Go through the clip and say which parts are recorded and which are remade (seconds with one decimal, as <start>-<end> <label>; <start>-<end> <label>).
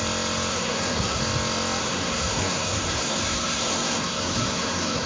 0.0-0.5 recorded; 0.5-1.2 remade; 1.2-1.8 recorded; 1.8-5.1 remade